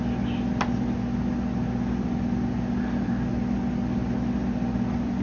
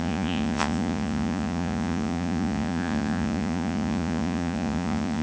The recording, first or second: first